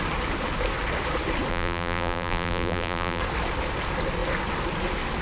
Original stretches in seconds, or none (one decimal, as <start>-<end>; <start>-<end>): 0.0-1.5; 3.2-5.2